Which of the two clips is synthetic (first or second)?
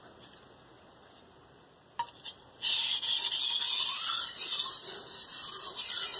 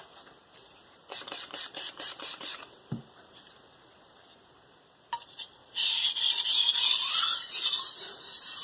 second